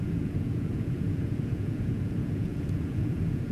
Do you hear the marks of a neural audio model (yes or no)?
yes